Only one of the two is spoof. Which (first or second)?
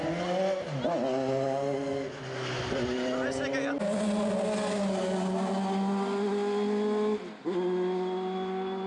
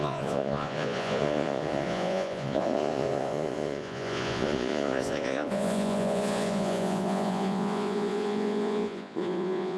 second